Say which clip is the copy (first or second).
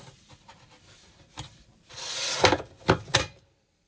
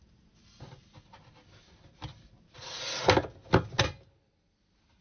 first